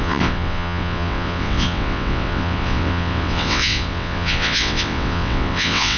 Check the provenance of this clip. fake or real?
fake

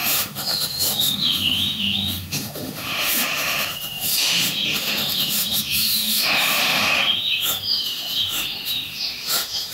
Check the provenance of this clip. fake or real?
fake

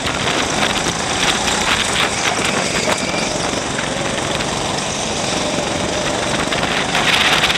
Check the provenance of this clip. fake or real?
real